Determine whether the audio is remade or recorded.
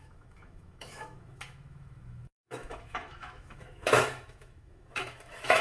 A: remade